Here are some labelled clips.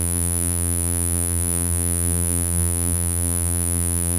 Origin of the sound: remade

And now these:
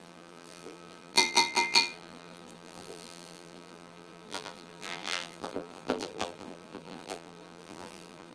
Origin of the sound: remade